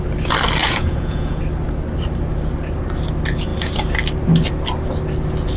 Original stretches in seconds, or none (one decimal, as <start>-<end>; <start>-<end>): 0.0-0.6; 1.4-5.6